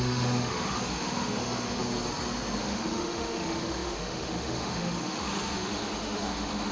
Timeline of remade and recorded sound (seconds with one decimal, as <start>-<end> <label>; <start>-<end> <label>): 0.0-1.8 remade; 1.8-2.6 recorded; 2.6-6.7 remade